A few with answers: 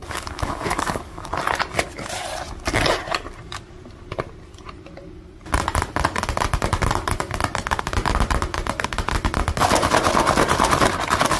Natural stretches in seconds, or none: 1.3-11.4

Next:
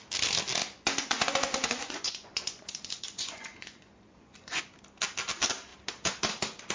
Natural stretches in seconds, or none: 0.0-0.6; 4.6-6.7

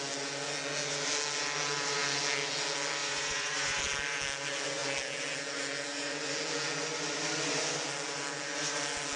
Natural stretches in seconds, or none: 0.0-3.0; 3.8-9.2

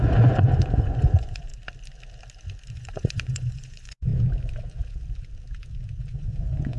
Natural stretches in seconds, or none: 1.5-2.7; 4.1-6.0

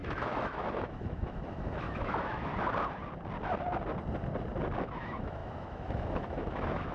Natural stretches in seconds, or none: 2.5-4.8